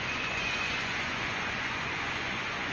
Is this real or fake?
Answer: fake